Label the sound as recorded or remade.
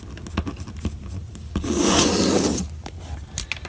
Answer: recorded